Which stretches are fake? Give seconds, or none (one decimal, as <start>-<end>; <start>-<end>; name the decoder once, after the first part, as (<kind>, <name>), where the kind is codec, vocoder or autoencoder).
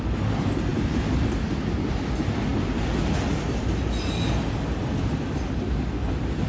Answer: none